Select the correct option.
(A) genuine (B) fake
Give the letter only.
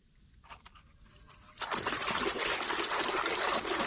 A